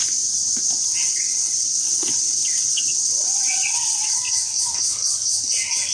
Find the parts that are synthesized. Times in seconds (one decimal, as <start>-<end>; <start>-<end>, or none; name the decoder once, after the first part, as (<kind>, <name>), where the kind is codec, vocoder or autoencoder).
0.9-4.2 (vocoder, WaveNeXt)